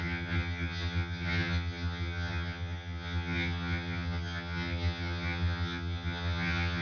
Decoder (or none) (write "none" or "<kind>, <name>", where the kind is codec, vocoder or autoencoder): vocoder, HiFi-GAN